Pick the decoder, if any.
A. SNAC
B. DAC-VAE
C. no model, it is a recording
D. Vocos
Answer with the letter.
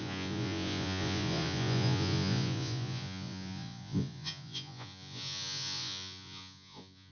D